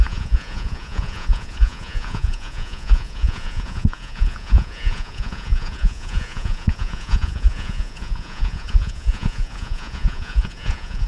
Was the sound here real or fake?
fake